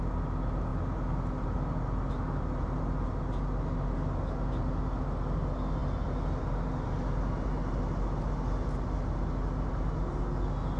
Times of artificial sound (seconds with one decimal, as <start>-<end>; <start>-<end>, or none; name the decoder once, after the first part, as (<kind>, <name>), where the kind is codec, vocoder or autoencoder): none

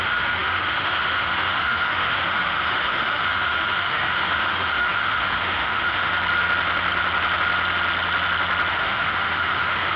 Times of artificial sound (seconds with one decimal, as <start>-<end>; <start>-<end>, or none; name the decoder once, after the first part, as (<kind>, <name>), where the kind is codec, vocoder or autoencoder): 0.0-6.1 (autoencoder, DAC-VAE); 8.7-10.0

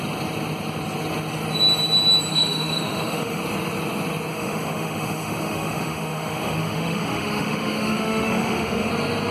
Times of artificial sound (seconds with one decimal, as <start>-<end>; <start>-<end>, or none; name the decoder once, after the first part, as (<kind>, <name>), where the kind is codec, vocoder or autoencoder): 2.3-3.4 (autoencoder, DAC-VAE); 4.3-8.9